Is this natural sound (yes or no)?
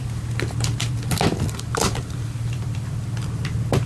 no